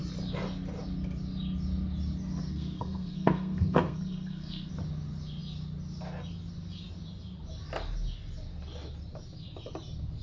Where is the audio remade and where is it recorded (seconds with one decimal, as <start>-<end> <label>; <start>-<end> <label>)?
0.0-2.5 recorded; 2.5-4.7 remade; 4.7-10.2 recorded